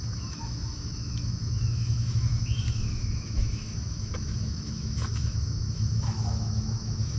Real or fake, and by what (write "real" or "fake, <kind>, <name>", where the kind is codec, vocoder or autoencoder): fake, autoencoder, DAC-VAE